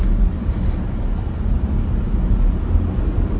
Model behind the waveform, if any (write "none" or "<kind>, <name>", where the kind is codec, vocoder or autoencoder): none